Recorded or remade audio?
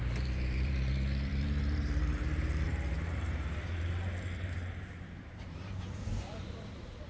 remade